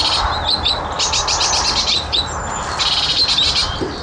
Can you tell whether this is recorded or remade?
recorded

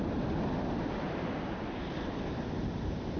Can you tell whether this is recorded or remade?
recorded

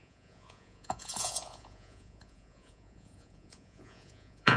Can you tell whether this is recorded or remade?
remade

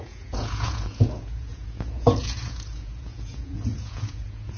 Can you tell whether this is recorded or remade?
remade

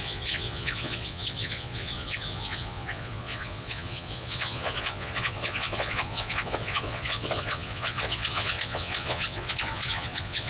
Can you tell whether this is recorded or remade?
remade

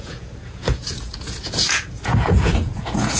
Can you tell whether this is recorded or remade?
remade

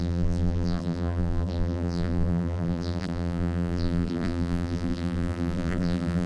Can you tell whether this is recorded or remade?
remade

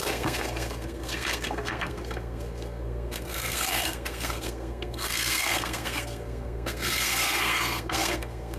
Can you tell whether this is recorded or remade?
remade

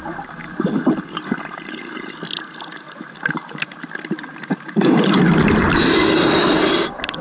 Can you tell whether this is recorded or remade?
recorded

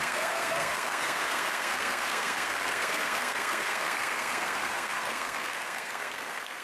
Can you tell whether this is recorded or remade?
remade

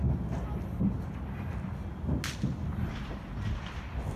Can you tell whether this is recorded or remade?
recorded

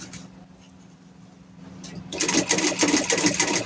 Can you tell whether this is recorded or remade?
recorded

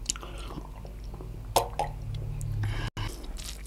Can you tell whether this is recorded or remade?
recorded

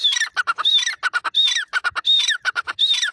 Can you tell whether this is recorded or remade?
recorded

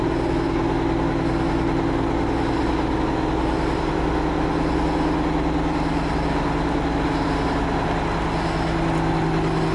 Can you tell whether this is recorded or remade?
recorded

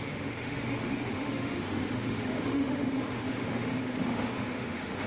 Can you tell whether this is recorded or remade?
remade